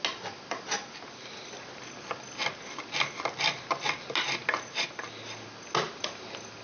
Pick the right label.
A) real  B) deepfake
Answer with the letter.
A